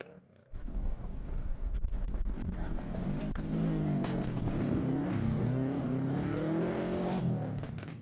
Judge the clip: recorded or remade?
remade